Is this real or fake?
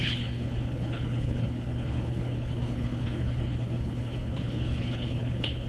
fake